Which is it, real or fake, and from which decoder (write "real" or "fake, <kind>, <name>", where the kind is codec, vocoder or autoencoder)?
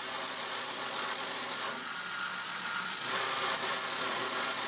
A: fake, vocoder, Vocos